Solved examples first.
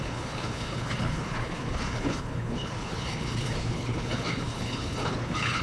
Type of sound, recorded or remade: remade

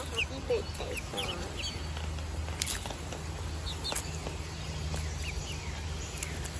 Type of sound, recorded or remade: recorded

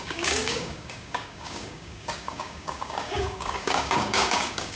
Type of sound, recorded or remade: remade